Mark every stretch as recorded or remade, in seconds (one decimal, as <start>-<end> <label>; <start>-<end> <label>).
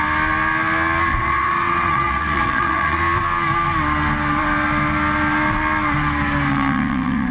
0.0-1.1 recorded; 1.1-3.0 remade; 3.0-6.5 recorded; 6.5-7.3 remade